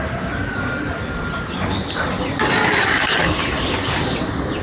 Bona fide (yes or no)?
yes